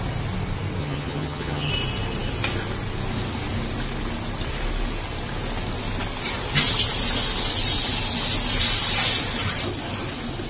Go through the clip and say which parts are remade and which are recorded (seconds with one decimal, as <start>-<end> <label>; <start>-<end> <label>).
0.0-0.8 recorded; 0.8-1.7 remade; 1.7-10.5 recorded